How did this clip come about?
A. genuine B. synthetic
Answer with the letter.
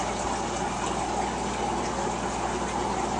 A